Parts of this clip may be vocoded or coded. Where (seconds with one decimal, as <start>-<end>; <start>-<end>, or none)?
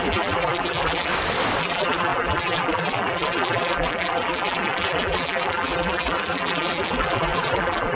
0.0-1.1; 1.6-8.0